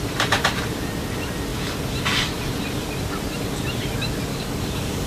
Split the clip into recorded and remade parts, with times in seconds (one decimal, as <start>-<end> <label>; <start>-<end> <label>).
0.0-4.3 recorded; 4.3-5.1 remade